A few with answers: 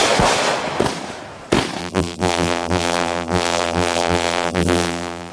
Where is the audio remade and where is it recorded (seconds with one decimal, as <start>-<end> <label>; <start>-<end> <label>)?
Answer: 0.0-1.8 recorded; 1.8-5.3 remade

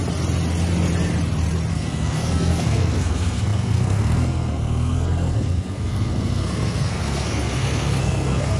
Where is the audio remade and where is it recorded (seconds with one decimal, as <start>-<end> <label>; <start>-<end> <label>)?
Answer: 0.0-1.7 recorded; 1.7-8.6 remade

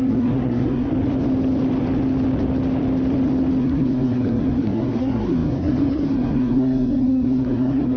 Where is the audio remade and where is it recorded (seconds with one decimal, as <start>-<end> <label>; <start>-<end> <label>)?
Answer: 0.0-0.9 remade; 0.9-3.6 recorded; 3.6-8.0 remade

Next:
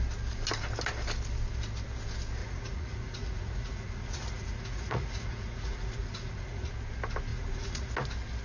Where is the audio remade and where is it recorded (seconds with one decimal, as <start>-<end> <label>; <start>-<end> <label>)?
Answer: 0.0-2.4 recorded; 2.4-6.7 remade; 6.7-7.3 recorded; 7.3-7.9 remade; 7.9-8.4 recorded

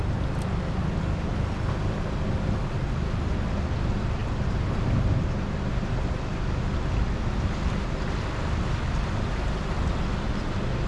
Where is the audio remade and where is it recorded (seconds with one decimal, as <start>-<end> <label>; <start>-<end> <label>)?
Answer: 0.0-10.9 recorded

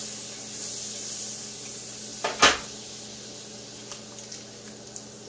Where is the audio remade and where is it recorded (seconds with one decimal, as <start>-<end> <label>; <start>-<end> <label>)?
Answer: 0.0-5.3 recorded

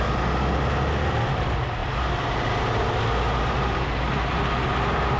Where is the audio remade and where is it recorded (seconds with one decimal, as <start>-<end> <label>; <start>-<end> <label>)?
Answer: 0.0-5.2 recorded